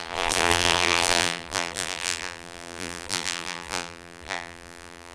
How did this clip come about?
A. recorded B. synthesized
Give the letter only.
B